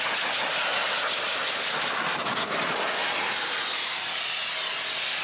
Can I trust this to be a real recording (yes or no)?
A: yes